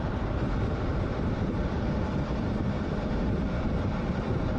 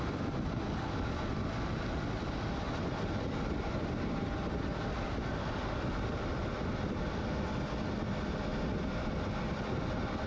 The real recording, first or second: second